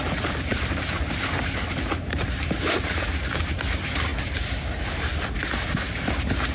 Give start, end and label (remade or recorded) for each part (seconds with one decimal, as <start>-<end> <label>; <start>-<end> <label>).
0.0-6.5 remade